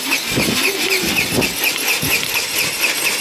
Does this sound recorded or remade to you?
recorded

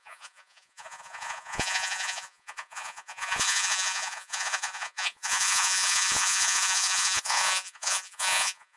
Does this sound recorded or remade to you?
remade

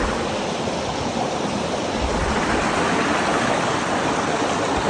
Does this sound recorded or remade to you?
recorded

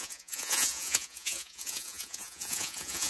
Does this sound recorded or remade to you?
remade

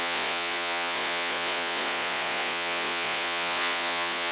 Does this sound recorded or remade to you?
remade